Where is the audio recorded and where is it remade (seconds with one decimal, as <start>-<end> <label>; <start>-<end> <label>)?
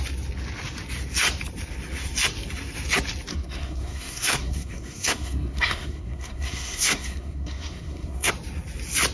0.0-3.3 recorded; 3.3-8.3 remade; 8.3-9.1 recorded